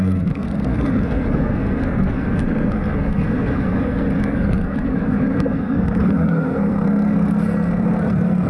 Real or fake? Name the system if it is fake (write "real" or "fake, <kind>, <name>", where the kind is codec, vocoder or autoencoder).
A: fake, codec, SNAC